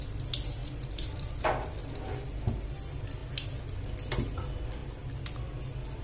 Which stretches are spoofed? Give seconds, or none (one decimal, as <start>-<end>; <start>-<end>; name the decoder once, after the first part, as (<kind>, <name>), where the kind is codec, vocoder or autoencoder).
0.6-2.4 (vocoder, BigVGAN v2)